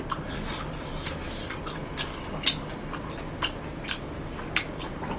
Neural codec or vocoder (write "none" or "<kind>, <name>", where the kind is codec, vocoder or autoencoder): none